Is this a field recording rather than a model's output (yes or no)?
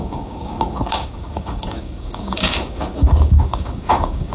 no